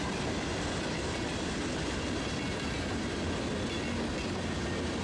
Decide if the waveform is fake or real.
real